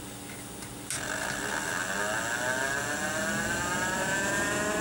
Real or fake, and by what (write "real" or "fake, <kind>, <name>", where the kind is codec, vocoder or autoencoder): real